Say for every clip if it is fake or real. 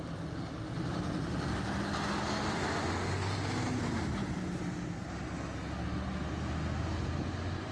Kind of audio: real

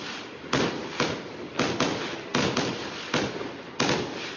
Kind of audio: real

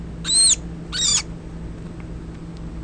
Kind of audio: real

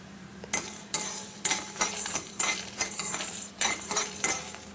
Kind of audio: fake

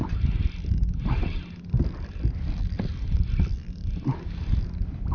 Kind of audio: real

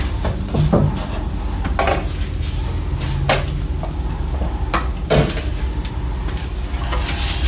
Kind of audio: real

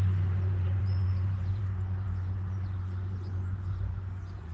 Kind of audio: fake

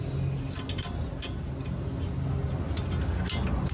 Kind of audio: real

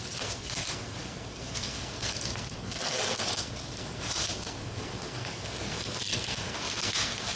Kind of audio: fake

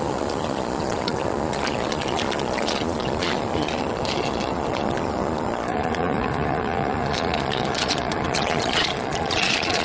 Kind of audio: fake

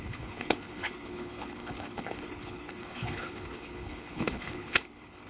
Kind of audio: fake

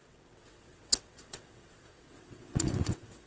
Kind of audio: fake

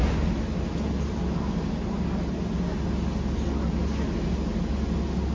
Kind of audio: real